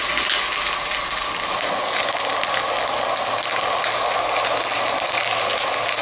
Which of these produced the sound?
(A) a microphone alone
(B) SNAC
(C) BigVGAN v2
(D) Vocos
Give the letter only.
A